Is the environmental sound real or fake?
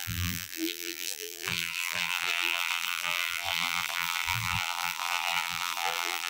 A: fake